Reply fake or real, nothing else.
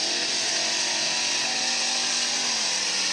real